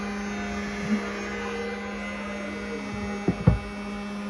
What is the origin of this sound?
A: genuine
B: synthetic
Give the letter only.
A